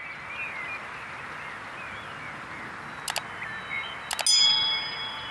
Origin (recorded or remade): recorded